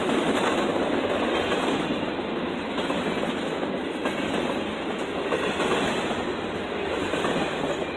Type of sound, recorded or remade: recorded